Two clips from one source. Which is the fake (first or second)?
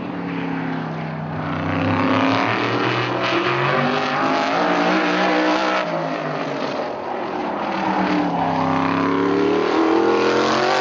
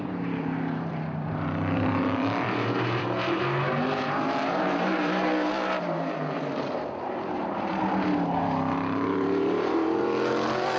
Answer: second